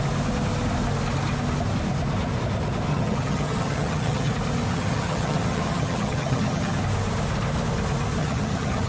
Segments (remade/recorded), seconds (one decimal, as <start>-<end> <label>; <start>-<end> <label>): 0.0-2.9 recorded; 2.9-4.3 remade; 4.3-4.7 recorded; 4.7-6.8 remade; 6.8-8.2 recorded; 8.2-8.9 remade